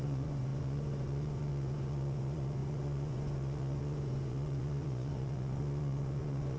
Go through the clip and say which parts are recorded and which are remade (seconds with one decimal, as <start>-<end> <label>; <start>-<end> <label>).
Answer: 0.0-6.6 remade